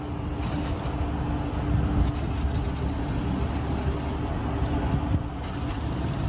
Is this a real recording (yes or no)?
yes